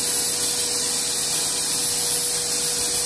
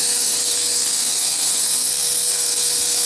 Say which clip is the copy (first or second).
second